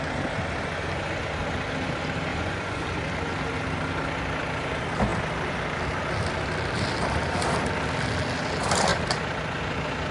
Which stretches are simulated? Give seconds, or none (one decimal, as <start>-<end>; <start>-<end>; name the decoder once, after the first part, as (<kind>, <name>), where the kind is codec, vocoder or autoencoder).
2.3-2.9 (vocoder, Vocos)